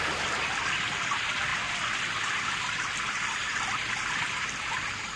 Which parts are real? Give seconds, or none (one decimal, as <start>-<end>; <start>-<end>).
0.0-1.5; 4.6-5.2

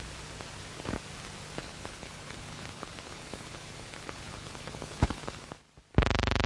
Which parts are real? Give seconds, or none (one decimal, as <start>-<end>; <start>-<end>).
0.0-1.6; 5.5-6.5